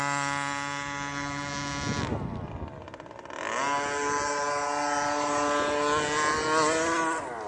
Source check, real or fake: real